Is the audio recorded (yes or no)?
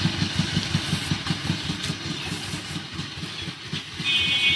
yes